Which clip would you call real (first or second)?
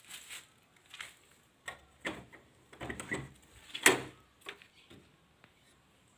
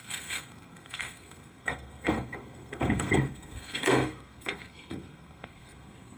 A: first